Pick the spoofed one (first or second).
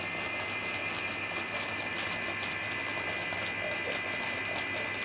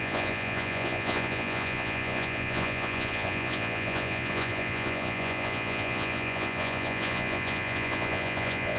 second